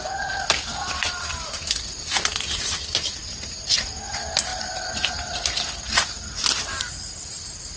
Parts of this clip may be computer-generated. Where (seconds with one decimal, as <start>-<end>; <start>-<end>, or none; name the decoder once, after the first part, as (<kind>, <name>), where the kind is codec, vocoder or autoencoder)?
none